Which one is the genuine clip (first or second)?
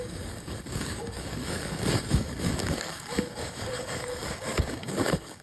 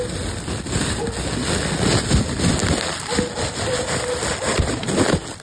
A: second